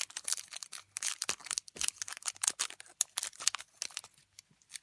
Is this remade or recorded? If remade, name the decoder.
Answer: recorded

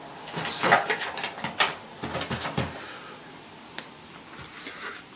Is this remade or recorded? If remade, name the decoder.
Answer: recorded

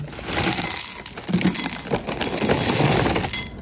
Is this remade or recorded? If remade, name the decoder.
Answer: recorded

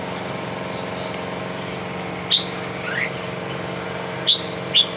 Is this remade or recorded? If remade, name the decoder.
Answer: recorded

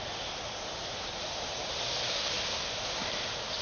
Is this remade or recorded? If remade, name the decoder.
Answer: recorded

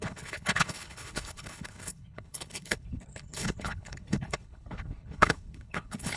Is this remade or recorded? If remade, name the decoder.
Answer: remade, codec, HILCodec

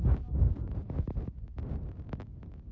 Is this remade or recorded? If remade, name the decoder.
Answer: recorded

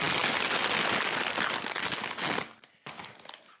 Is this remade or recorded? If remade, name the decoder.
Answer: recorded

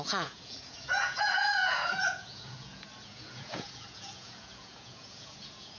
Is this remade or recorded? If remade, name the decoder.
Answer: remade, vocoder, Vocos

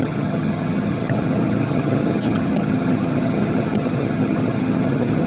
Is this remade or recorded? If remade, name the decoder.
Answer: remade, vocoder, HiFi-GAN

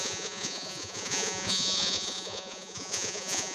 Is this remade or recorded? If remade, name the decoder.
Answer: remade, vocoder, Vocos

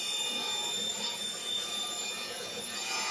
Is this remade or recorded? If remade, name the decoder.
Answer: remade, vocoder, Vocos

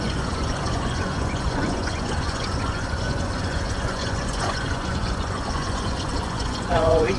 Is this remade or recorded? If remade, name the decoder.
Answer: remade, vocoder, Vocos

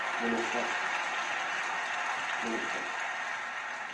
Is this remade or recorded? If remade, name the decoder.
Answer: recorded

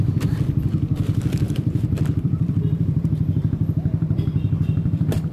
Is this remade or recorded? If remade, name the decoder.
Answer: remade, vocoder, BigVGAN v2